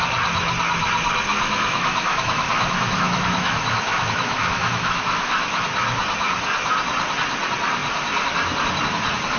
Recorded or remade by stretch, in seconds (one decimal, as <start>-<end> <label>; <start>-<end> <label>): 0.0-1.3 recorded; 1.3-5.6 remade; 5.6-9.4 recorded